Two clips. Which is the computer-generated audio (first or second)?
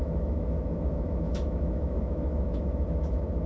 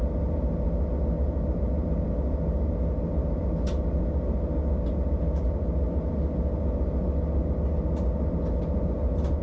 first